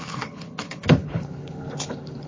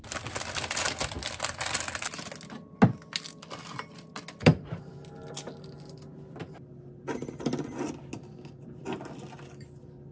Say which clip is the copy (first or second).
first